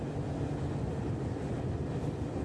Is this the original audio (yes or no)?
yes